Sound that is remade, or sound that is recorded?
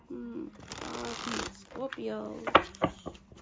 recorded